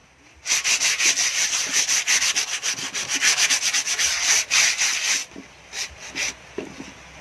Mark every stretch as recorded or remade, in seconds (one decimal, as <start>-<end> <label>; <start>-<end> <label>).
0.0-4.3 remade; 4.3-5.2 recorded; 5.2-7.2 remade